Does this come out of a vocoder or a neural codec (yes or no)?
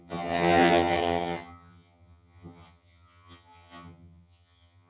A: yes